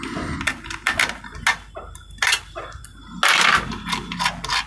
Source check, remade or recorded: recorded